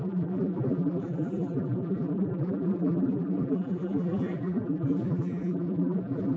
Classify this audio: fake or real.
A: fake